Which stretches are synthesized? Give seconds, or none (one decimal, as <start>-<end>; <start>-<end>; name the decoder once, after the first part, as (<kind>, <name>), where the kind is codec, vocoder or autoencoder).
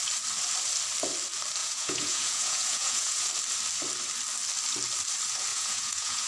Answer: 1.6-3.3 (vocoder, Vocos); 5.5-6.3